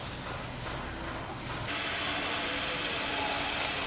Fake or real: real